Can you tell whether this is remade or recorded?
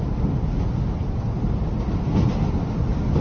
recorded